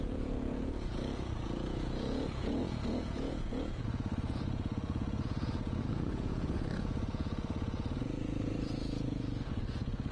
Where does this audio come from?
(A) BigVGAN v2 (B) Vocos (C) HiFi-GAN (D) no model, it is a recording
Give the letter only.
B